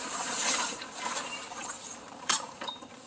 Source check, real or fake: fake